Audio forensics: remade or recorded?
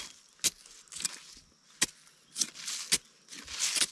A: recorded